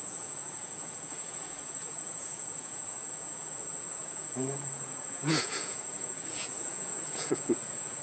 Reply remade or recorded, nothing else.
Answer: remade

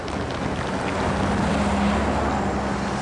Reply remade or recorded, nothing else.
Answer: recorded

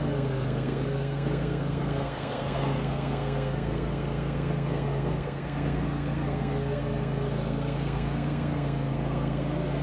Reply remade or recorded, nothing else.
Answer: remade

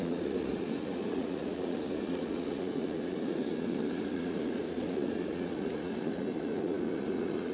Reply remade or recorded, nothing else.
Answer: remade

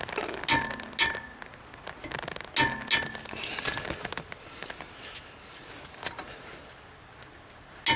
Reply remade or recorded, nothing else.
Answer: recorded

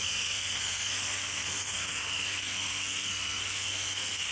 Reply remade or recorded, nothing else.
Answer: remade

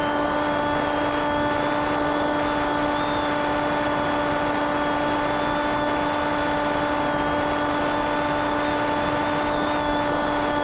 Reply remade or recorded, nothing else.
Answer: recorded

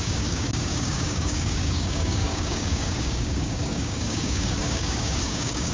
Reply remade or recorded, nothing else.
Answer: remade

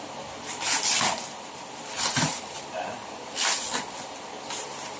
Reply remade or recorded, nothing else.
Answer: remade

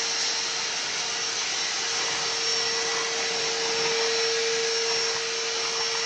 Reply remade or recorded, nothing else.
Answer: recorded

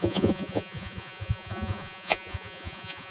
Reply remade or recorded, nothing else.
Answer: remade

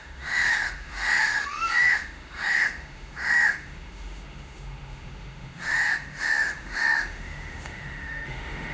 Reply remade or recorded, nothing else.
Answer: remade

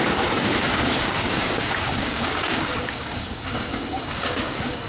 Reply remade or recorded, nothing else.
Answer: remade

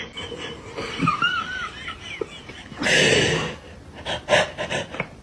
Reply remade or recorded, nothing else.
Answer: recorded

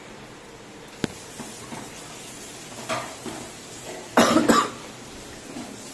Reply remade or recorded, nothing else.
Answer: recorded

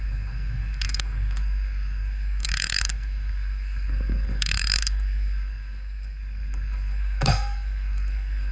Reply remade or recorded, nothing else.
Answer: remade